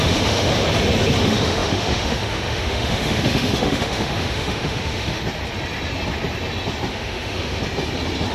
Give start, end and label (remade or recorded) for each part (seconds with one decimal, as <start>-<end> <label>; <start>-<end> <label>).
0.0-0.5 remade; 0.5-1.2 recorded; 1.2-5.2 remade; 5.2-6.9 recorded; 6.9-7.6 remade; 7.6-8.3 recorded